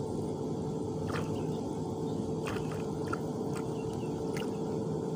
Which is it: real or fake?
real